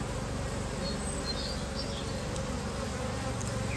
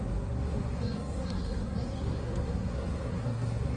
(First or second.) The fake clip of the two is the second